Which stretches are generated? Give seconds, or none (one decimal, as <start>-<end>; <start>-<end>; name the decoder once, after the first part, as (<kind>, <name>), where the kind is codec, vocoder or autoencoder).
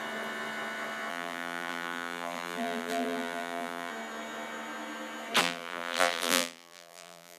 1.1-3.9 (vocoder, BigVGAN v2); 5.4-7.4